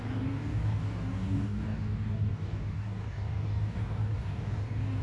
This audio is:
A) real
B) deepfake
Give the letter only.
B